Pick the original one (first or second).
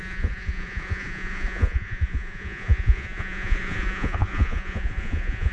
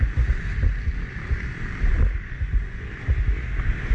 second